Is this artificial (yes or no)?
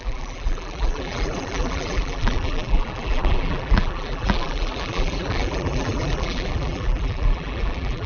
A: yes